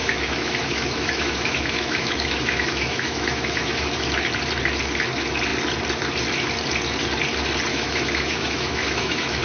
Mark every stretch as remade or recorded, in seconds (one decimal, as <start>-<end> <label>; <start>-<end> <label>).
0.0-4.0 remade; 4.0-7.7 recorded; 7.7-9.4 remade